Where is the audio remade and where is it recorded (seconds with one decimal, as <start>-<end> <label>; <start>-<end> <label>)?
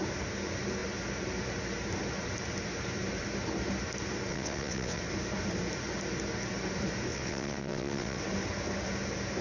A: 0.0-4.3 recorded; 4.3-5.0 remade; 5.0-7.1 recorded; 7.1-8.2 remade; 8.2-9.4 recorded